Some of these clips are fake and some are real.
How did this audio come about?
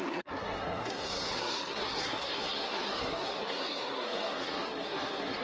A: fake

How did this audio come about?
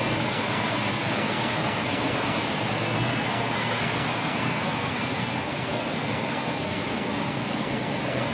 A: fake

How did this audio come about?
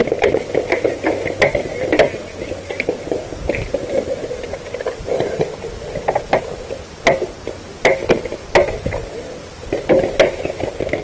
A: real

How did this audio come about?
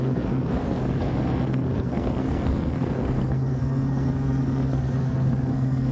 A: fake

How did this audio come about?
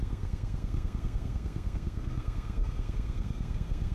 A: fake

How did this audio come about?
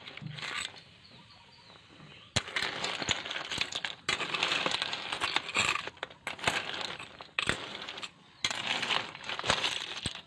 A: real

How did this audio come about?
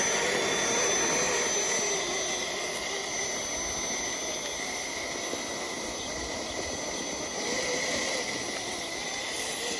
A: real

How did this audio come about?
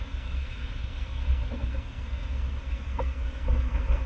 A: fake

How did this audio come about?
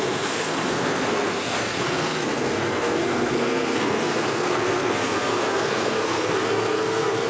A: fake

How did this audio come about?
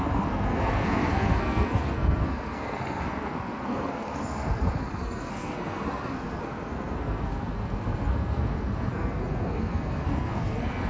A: fake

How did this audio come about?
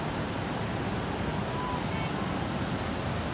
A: real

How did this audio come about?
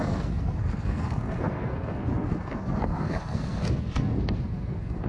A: fake